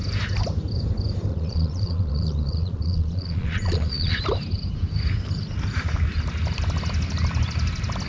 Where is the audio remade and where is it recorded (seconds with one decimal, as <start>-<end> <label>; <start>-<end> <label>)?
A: 0.0-1.3 recorded; 1.3-4.2 remade; 4.2-8.1 recorded